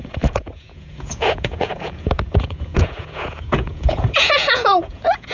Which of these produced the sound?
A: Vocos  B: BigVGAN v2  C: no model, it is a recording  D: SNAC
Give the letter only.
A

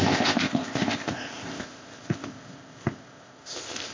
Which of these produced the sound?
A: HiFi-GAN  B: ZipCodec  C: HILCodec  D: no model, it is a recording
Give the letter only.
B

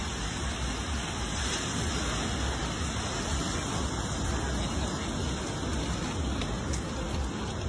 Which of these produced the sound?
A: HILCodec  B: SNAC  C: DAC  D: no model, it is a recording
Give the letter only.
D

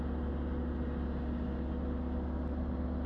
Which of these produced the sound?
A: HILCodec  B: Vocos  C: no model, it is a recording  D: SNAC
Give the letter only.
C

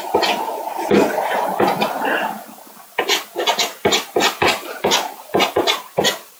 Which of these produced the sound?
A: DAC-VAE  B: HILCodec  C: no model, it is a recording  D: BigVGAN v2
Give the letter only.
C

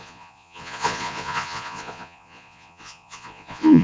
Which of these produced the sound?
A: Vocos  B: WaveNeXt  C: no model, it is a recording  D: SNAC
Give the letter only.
A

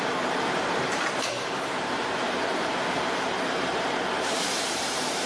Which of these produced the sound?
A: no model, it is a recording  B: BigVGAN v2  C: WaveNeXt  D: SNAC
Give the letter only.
B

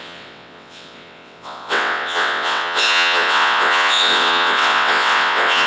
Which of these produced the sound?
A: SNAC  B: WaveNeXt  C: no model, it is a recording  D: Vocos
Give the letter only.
B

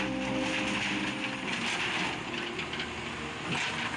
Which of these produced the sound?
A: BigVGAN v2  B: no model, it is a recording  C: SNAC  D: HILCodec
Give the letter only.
B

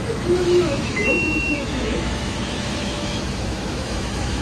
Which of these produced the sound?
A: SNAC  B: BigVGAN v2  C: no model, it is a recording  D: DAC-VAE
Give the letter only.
D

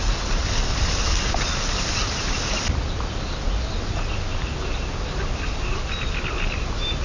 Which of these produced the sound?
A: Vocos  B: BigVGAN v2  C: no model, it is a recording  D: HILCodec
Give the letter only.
C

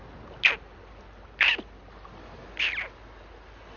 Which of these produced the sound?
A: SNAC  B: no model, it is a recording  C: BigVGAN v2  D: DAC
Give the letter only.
B